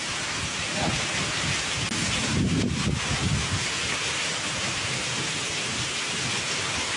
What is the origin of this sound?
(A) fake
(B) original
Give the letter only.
B